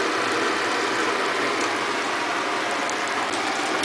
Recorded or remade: recorded